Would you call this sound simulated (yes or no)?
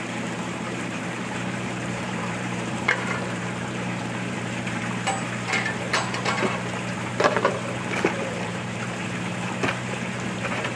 yes